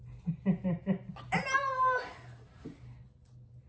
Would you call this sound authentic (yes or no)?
yes